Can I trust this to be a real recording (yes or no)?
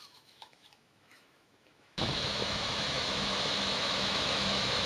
no